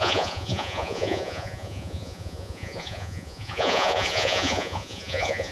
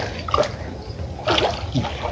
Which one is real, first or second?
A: second